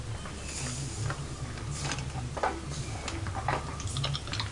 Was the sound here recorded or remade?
recorded